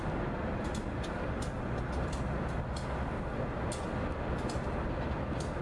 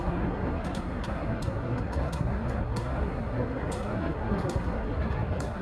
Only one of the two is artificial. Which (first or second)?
second